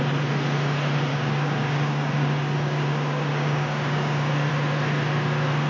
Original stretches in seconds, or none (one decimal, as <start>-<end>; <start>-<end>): 0.0-1.1; 4.5-5.7